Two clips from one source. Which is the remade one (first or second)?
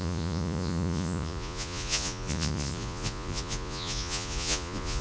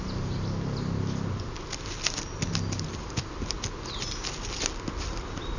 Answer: first